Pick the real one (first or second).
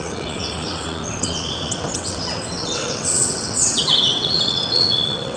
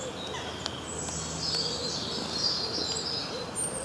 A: second